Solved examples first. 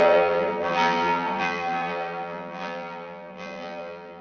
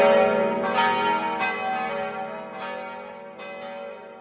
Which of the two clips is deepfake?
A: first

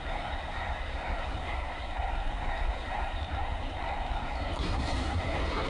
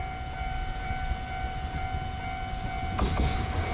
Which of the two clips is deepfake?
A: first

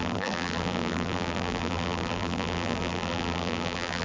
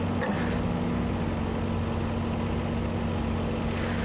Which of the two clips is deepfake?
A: first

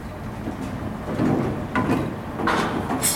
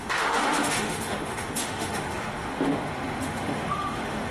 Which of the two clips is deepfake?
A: second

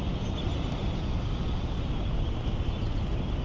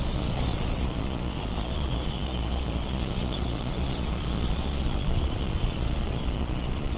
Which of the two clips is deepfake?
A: second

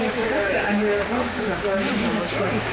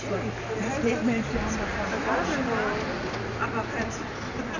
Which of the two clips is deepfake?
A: first